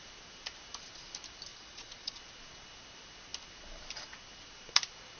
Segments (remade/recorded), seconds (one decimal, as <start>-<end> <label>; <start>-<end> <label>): 0.0-1.5 recorded; 1.5-2.2 remade; 2.2-5.2 recorded